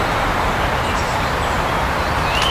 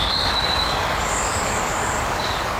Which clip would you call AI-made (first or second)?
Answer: second